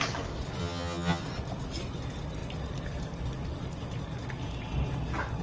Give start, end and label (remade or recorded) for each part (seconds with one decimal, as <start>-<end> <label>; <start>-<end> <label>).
0.0-0.6 recorded; 0.6-1.2 remade; 1.2-5.4 recorded